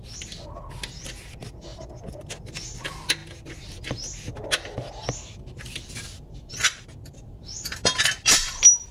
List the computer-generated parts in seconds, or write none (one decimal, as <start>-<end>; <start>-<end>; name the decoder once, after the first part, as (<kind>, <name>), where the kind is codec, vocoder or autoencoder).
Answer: none